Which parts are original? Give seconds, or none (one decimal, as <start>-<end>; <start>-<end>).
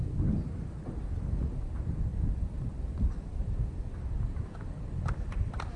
0.0-2.1